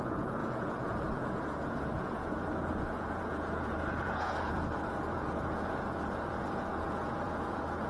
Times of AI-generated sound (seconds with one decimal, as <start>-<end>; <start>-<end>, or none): 0.0-7.9